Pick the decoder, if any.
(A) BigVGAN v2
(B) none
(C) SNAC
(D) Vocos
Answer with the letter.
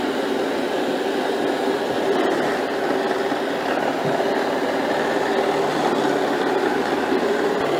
B